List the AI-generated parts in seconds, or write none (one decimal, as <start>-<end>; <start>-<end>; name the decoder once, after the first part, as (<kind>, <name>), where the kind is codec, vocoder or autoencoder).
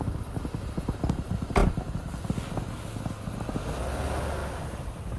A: 4.4-5.2 (vocoder, BigVGAN v2)